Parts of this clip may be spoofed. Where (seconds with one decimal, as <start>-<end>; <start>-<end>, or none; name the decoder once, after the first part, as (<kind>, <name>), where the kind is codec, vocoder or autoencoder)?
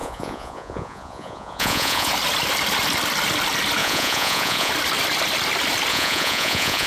0.0-2.1 (vocoder, Vocos); 3.8-4.7; 5.9-6.9